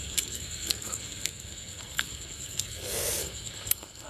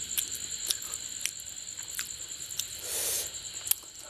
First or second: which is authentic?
second